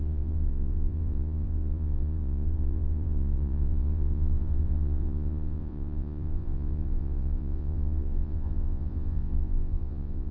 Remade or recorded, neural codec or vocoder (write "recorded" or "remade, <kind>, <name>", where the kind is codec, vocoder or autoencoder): remade, vocoder, Vocos